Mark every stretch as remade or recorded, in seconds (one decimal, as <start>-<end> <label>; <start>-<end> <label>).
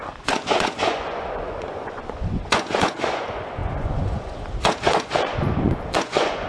0.0-6.5 remade